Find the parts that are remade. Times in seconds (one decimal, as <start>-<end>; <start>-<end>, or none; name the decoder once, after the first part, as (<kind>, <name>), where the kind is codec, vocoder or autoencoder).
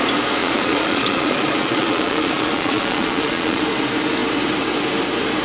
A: 0.4-3.6 (vocoder, Vocos)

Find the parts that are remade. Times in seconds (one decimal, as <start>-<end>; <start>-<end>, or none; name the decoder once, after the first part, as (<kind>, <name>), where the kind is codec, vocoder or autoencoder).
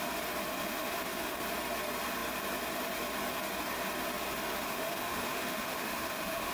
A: 0.5-1.4 (autoencoder, DAC-VAE); 4.7-6.5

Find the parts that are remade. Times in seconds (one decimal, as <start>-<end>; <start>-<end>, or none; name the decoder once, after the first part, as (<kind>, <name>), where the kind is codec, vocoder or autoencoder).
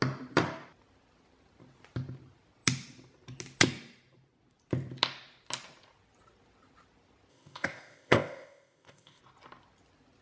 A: 7.3-9.2 (codec, ZipCodec)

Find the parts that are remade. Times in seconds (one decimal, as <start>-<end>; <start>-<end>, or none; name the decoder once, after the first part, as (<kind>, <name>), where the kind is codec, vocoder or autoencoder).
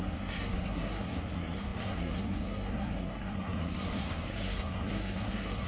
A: 0.0-5.7 (codec, SNAC)